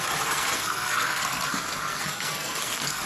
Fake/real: fake